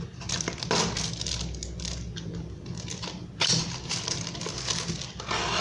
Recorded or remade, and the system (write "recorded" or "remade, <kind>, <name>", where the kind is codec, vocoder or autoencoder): recorded